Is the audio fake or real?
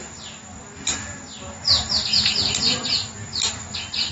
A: real